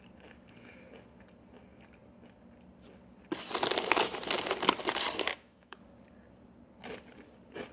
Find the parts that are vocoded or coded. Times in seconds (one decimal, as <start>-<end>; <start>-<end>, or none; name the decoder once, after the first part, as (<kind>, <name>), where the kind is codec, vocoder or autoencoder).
5.3-5.8 (autoencoder, DAC-VAE)